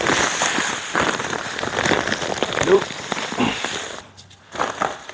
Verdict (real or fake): fake